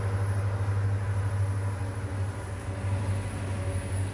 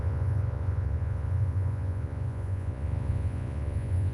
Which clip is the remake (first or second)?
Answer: second